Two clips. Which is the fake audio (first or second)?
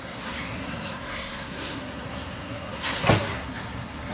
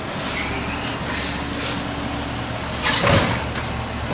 first